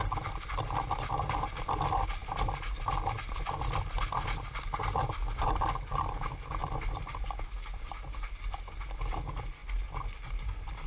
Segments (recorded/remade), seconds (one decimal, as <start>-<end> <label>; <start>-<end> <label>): 0.0-10.9 recorded